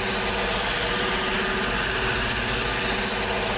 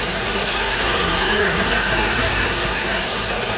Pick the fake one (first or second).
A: second